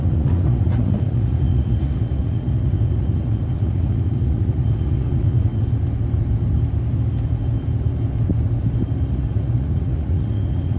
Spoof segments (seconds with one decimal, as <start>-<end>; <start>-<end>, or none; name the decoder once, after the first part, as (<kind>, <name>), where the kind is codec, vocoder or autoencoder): 0.0-5.5 (vocoder, Vocos); 9.1-10.8